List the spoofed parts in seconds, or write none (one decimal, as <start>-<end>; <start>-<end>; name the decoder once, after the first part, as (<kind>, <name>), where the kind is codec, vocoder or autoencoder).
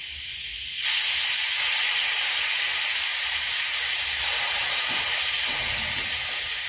3.1-6.7 (vocoder, BigVGAN v2)